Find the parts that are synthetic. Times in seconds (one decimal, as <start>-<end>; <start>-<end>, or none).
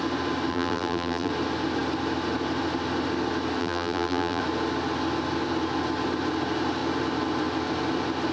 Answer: 0.5-1.3; 3.6-4.4